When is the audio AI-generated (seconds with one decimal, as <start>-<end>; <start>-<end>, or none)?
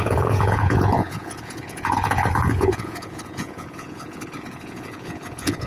0.0-5.7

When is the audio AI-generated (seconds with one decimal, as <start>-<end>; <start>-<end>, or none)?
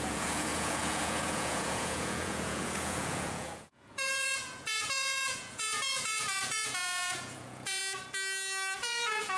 0.0-7.8; 8.8-9.4